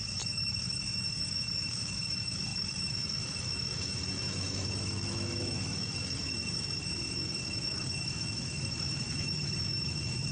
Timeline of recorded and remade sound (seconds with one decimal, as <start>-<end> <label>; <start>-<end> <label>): 0.0-10.3 remade